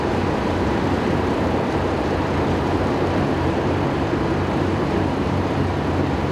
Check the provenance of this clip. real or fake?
fake